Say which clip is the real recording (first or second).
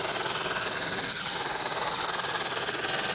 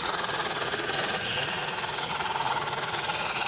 first